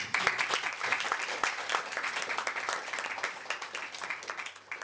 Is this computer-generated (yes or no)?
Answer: yes